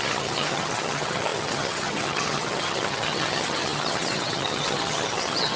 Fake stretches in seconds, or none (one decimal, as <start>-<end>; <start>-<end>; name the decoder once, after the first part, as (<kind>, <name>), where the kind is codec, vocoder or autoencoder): 0.0-5.6 (vocoder, HiFi-GAN)

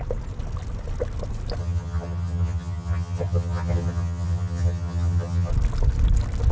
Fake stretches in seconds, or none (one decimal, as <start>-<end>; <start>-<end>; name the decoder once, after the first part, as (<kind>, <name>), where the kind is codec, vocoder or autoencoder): 1.6-5.5 (vocoder, HiFi-GAN)

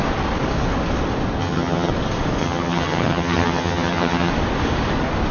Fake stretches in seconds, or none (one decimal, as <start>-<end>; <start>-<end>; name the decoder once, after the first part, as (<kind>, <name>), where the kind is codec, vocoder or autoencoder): 1.4-1.9 (vocoder, HiFi-GAN); 2.4-4.3

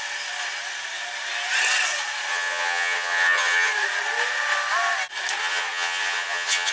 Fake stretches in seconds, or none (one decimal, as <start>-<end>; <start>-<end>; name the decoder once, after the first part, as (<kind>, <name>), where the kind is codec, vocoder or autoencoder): 2.3-3.7 (vocoder, HiFi-GAN); 5.4-6.7